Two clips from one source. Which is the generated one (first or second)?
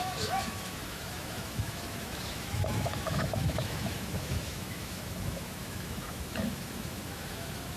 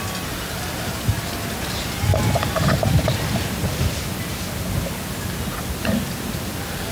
first